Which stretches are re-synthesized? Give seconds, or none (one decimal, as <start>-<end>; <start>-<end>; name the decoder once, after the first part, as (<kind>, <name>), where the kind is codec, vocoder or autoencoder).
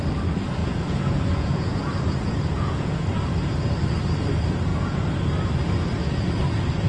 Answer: 0.6-3.0 (vocoder, Vocos)